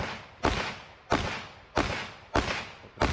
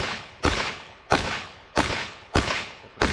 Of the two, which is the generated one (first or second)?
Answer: second